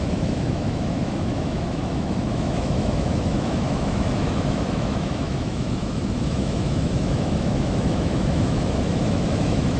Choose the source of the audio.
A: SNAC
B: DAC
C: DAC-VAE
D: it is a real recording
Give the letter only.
C